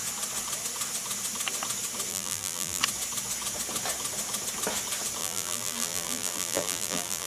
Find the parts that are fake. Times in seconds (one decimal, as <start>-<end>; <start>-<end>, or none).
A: 2.1-2.8; 5.2-7.3